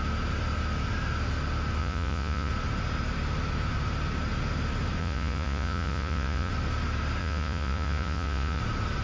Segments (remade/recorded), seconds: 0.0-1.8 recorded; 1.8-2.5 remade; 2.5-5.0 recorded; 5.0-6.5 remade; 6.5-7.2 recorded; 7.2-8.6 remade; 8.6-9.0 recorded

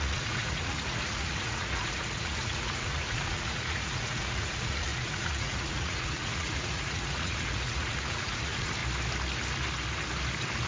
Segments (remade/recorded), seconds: 0.0-8.8 remade; 8.8-10.7 recorded

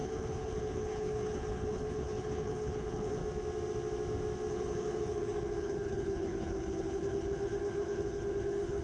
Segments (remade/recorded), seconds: 0.0-3.2 remade; 3.2-4.5 recorded; 4.5-8.8 remade

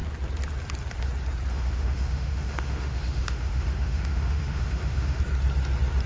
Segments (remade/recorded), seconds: 0.0-1.5 recorded; 1.5-5.2 remade; 5.2-6.1 recorded

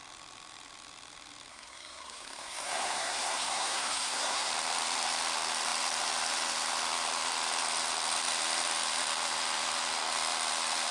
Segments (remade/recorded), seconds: 0.0-1.5 recorded; 1.5-4.5 remade; 4.5-10.9 recorded

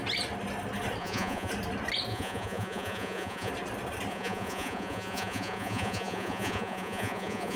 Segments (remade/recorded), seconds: 0.0-1.0 recorded; 1.0-1.5 remade; 1.5-2.1 recorded; 2.1-3.5 remade; 3.5-4.1 recorded; 4.1-7.6 remade